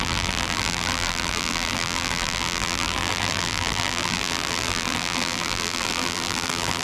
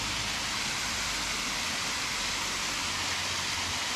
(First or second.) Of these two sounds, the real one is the second